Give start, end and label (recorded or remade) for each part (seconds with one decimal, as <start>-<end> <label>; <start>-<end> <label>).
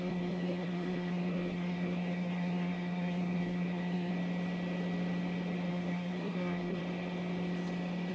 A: 0.0-4.1 remade; 4.1-5.7 recorded; 5.7-6.8 remade; 6.8-8.1 recorded